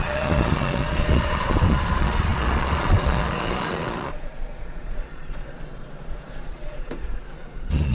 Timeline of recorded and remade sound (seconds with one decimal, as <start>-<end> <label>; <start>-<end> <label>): 0.0-7.9 remade